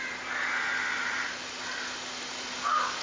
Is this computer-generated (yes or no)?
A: no